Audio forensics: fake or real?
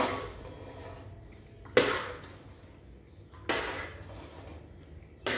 real